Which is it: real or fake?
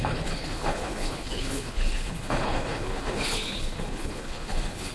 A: fake